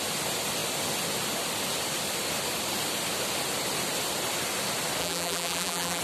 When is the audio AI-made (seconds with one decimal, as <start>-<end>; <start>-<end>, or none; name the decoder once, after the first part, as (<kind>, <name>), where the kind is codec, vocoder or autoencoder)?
5.0-6.0 (vocoder, BigVGAN v2)